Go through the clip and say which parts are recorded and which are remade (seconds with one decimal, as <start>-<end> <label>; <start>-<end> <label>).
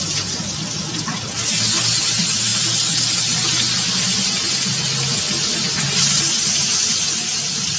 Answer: 0.0-7.8 recorded